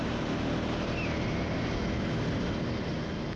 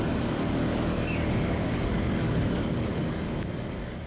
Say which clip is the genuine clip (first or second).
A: first